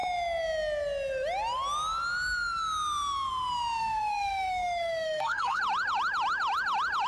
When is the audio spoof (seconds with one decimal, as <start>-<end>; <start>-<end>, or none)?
3.8-5.6